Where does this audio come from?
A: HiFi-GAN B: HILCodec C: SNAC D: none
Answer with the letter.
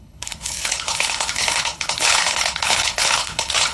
B